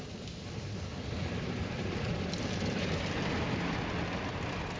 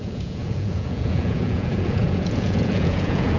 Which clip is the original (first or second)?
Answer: first